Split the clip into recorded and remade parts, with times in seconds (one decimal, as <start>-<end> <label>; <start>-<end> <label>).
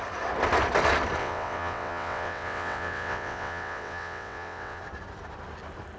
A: 0.0-1.2 recorded; 1.2-4.8 remade; 4.8-6.0 recorded